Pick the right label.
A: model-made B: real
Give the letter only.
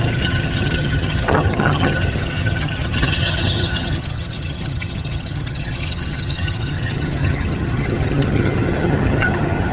A